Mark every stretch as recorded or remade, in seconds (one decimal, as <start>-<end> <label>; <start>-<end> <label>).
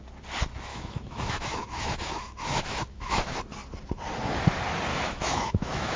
0.0-0.7 recorded; 0.7-3.4 remade; 3.4-4.9 recorded; 4.9-6.0 remade